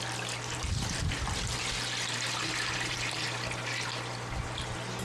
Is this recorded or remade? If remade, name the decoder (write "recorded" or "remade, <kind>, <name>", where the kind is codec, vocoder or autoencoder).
recorded